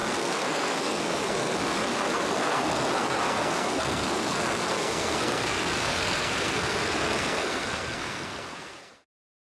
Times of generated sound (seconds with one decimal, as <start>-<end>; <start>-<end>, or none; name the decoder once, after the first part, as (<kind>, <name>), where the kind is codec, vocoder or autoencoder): 0.0-9.4 (codec, SNAC)